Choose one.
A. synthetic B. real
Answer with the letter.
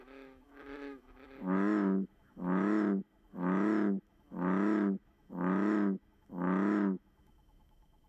A